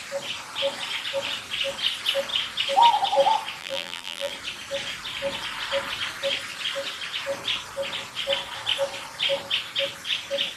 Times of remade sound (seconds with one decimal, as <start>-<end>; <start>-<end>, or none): 3.6-4.3